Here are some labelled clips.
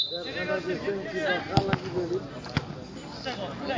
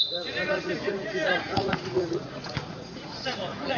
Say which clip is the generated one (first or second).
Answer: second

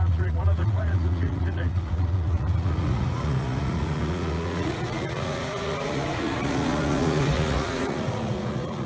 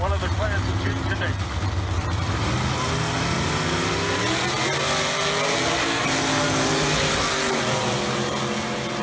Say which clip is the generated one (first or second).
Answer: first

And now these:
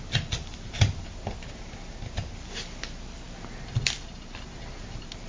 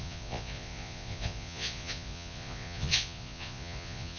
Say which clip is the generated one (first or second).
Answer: second